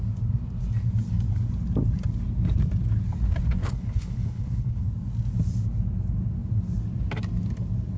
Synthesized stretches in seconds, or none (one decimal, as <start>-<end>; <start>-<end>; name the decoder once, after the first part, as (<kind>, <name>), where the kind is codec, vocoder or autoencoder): 3.6-4.8 (codec, HILCodec)